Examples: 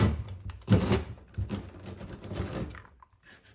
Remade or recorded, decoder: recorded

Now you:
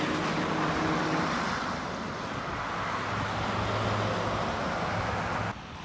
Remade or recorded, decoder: recorded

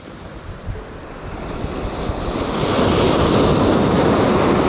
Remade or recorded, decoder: recorded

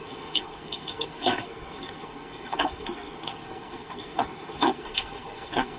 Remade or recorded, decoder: remade, codec, SNAC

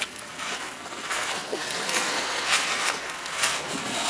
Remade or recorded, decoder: remade, codec, SNAC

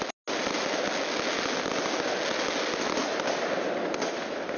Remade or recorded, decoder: recorded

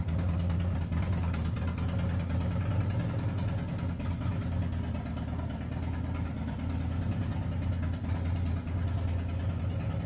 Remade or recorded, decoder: recorded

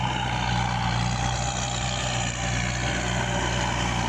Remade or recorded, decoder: recorded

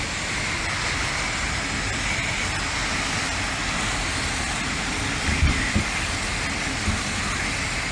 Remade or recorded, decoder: recorded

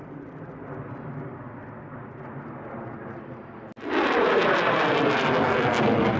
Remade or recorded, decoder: recorded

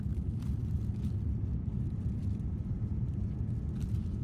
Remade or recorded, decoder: recorded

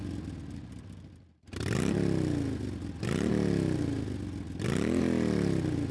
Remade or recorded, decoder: recorded